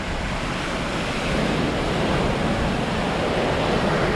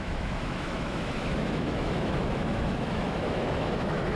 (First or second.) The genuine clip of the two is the first